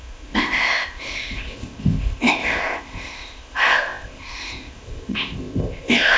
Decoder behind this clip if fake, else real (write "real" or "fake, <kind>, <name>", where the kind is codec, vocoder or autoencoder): fake, codec, ZipCodec